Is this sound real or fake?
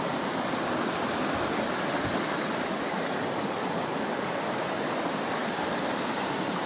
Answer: real